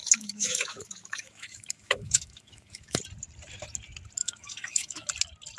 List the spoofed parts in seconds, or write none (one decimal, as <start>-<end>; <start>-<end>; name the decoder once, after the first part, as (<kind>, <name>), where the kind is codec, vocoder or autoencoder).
0.0-3.0 (autoencoder, DAC-VAE); 4.2-5.1